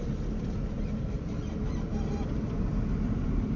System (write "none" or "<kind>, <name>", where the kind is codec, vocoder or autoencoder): none